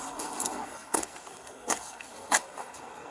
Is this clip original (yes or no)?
no